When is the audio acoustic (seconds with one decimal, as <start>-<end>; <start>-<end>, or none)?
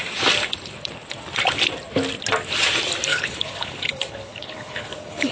0.0-3.1